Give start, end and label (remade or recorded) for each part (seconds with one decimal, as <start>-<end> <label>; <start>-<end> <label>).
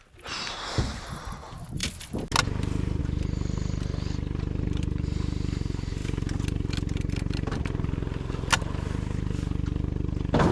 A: 0.0-10.5 recorded